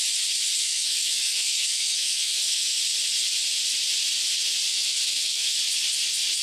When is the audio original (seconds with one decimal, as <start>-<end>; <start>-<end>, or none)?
0.0-0.6; 2.8-4.7; 5.6-6.4